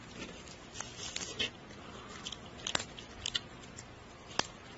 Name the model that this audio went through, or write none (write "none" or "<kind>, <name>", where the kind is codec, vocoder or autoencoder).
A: none